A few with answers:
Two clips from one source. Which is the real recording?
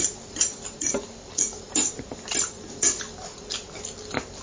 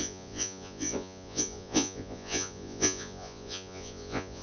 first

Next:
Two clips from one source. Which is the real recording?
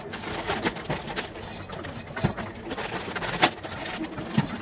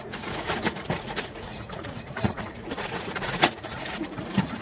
first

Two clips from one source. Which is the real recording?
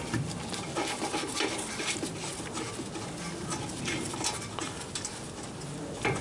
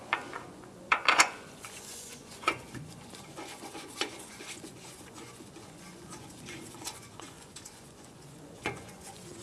first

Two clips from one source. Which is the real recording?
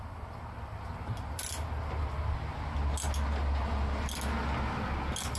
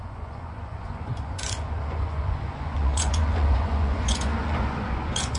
first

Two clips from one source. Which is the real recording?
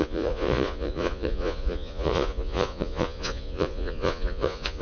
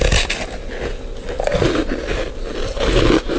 second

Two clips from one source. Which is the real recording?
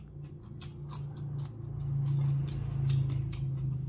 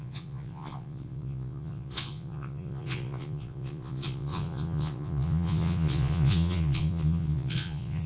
first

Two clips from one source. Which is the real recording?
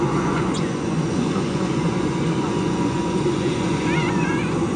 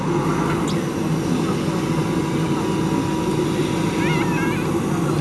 second